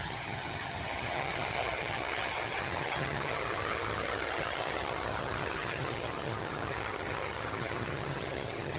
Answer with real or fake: fake